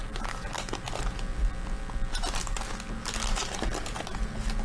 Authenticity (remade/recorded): recorded